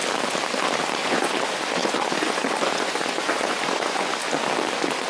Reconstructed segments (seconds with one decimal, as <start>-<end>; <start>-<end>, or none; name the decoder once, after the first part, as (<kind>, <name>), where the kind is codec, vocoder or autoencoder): 1.0-4.1 (vocoder, Vocos)